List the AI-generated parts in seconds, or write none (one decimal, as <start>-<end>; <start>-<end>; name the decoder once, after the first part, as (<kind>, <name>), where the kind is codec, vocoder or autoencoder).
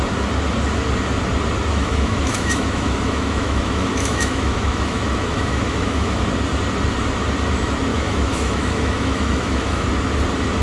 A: 1.7-6.2 (autoencoder, DAC-VAE); 7.9-9.9